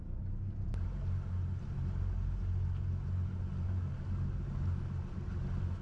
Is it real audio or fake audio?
real